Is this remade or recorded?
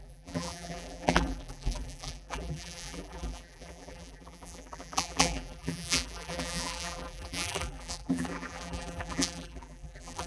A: remade